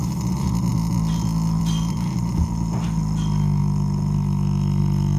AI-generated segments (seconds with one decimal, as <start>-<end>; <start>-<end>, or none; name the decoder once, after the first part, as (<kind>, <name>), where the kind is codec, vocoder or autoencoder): none